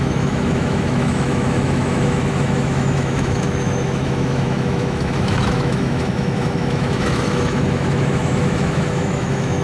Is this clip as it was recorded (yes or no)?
no